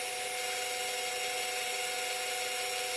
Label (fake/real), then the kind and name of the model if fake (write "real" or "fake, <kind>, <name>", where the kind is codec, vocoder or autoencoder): real